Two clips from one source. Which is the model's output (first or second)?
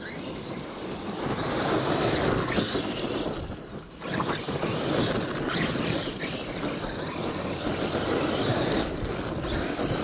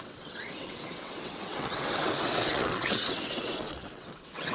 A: second